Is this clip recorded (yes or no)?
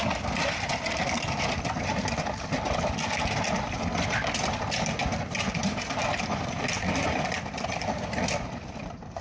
yes